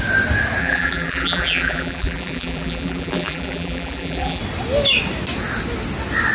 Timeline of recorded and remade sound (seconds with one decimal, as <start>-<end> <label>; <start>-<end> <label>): 0.0-0.6 recorded; 0.6-4.4 remade; 4.4-6.3 recorded